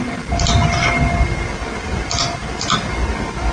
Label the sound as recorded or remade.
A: recorded